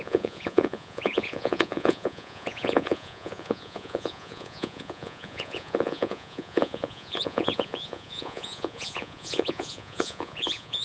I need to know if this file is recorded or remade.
remade